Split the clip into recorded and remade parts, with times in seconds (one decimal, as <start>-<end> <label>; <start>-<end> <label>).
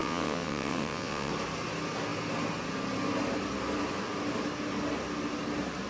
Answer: 0.0-1.3 remade; 1.3-5.9 recorded